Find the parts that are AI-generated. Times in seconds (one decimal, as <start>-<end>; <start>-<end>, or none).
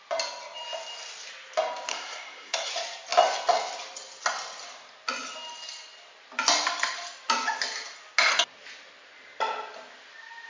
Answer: 1.9-2.7